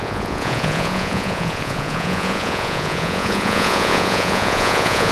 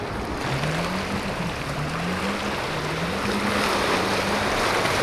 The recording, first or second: second